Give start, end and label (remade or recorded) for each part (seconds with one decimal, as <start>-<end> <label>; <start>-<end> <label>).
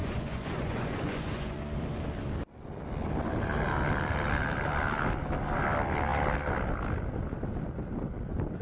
0.0-1.6 remade; 1.6-8.6 recorded